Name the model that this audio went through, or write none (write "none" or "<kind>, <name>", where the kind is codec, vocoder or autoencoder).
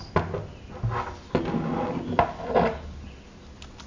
none